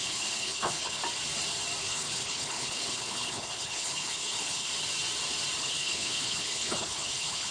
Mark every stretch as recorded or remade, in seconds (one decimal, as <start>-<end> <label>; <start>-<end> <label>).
0.0-1.0 remade; 1.0-1.8 recorded; 1.8-4.7 remade; 4.7-5.6 recorded; 5.6-7.5 remade